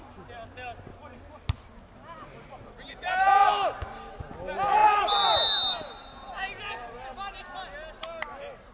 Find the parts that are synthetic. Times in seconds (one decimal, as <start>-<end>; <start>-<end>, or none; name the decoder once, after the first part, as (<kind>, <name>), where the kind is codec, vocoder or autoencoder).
none